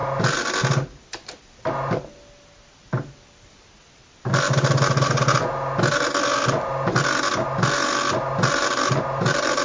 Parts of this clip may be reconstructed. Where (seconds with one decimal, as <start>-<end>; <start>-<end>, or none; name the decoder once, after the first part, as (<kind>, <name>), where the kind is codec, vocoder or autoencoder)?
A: none